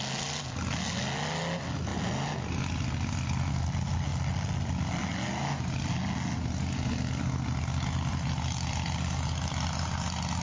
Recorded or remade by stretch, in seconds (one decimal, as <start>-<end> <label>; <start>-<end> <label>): 0.0-10.4 recorded